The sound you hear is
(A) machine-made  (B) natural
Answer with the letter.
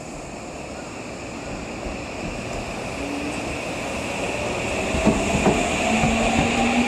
B